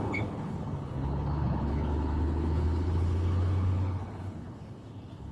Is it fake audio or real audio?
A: fake